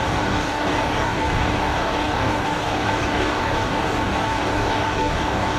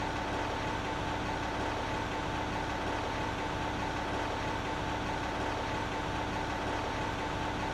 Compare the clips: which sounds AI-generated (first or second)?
first